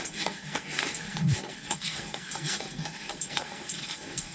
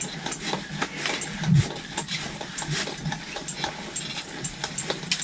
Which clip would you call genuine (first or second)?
second